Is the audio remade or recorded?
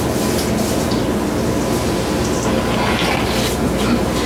recorded